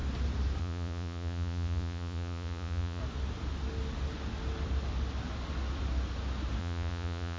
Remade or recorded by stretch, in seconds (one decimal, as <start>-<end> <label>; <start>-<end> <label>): 0.0-0.6 recorded; 0.6-3.0 remade; 3.0-6.6 recorded; 6.6-7.4 remade